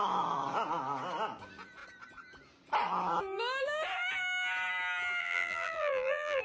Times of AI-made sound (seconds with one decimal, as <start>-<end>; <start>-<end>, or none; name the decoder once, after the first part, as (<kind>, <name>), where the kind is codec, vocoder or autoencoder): 5.2-6.4 (vocoder, BigVGAN v2)